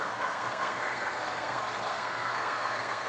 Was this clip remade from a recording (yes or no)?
yes